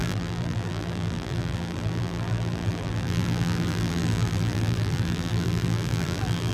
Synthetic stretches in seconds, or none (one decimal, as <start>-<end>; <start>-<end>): 0.0-6.5